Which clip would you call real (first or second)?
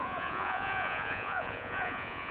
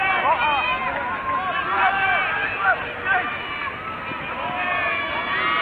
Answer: second